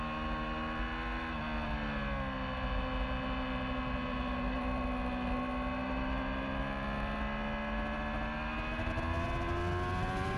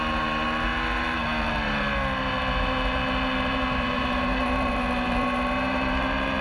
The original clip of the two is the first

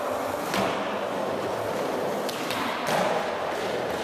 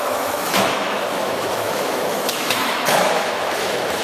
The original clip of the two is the first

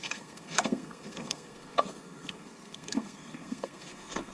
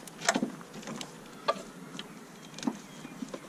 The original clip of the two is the second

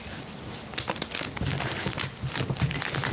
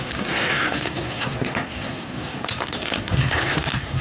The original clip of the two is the first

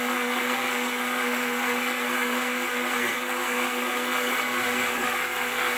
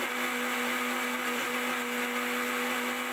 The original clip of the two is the second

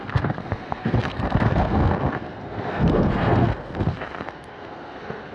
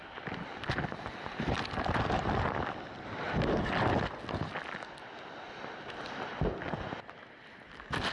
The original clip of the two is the second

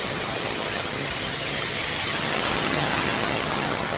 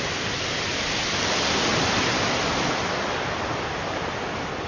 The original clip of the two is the second